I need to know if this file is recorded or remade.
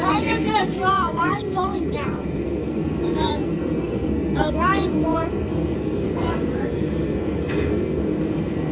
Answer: remade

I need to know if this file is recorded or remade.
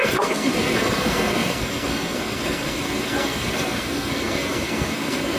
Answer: remade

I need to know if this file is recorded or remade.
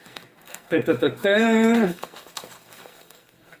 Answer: remade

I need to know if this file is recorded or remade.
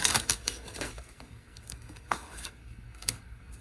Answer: remade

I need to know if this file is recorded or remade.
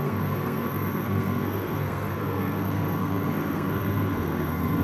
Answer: remade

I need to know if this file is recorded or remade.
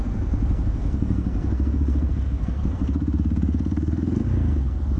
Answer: remade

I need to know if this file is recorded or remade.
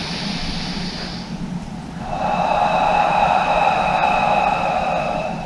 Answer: recorded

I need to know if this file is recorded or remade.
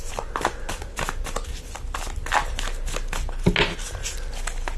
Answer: recorded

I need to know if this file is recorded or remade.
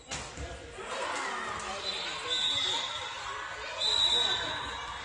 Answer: recorded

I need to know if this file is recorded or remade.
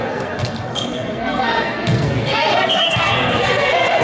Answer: remade